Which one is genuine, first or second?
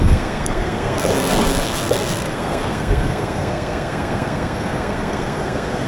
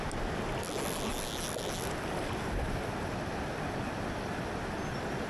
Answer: second